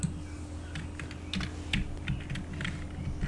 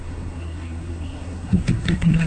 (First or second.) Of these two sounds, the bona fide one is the first